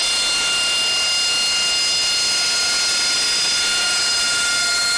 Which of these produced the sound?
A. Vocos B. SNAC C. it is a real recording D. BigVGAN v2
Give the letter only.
C